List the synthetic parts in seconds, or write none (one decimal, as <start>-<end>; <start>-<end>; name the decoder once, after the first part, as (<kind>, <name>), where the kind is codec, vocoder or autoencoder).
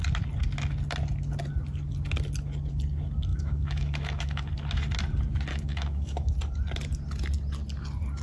3.3-4.5 (autoencoder, DAC-VAE); 5.5-6.4